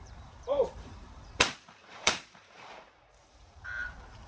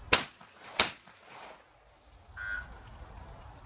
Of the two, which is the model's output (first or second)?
first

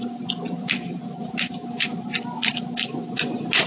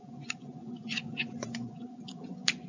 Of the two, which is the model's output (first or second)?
second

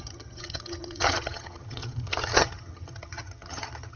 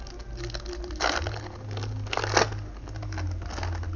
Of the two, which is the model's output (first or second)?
first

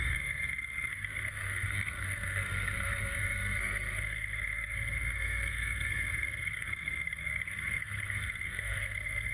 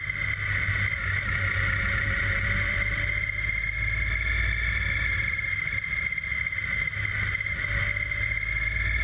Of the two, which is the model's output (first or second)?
first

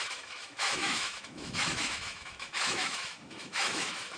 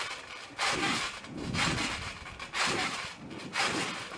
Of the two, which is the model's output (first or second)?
first